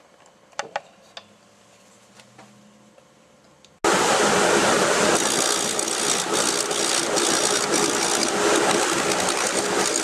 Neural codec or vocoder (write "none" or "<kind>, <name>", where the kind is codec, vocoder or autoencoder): none